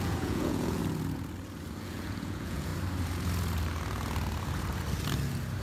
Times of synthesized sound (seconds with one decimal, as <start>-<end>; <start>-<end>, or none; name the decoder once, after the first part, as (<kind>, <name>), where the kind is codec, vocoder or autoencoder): 0.0-0.8 (vocoder, Vocos); 1.8-2.7